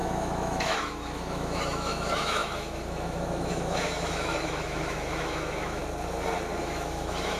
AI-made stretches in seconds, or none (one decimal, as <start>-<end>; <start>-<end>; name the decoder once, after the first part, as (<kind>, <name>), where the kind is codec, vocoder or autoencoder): 0.0-5.8 (autoencoder, DAC-VAE); 6.6-7.4